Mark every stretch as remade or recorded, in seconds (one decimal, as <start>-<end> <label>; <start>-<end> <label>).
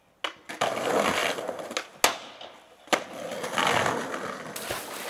0.0-5.1 recorded